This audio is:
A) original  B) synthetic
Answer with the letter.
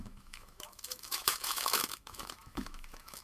B